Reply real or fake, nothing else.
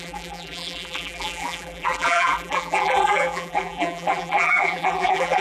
fake